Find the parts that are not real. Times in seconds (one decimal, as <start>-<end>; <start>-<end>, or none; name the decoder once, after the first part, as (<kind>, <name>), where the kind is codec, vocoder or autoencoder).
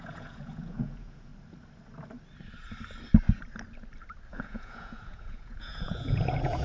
0.0-1.3 (vocoder, Vocos); 4.3-6.6